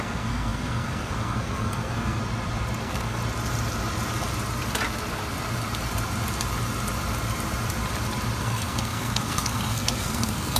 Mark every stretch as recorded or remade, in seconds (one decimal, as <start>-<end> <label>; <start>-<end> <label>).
0.0-2.2 remade; 2.2-2.8 recorded; 2.8-3.2 remade; 3.2-8.4 recorded; 8.4-10.6 remade